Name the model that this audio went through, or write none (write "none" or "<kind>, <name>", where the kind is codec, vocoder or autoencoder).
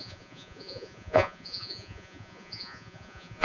vocoder, Vocos